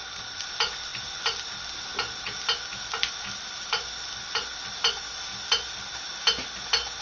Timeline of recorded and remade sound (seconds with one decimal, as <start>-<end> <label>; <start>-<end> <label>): 0.0-7.0 recorded